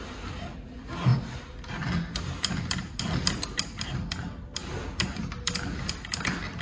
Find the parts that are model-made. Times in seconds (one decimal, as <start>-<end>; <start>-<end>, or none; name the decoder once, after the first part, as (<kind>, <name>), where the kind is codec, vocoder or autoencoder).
none